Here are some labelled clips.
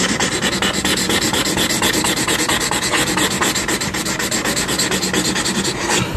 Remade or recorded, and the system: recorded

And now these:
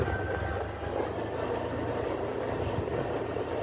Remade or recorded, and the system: recorded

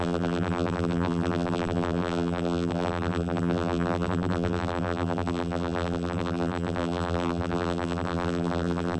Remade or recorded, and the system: remade, vocoder, BigVGAN v2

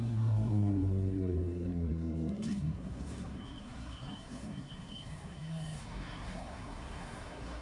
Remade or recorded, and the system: remade, codec, SNAC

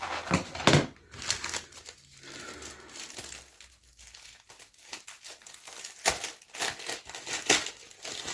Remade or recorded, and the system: recorded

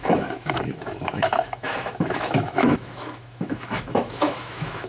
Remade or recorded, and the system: remade, autoencoder, DAC-VAE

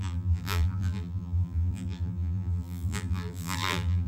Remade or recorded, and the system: remade, vocoder, BigVGAN v2